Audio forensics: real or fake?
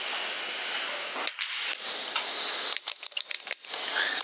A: real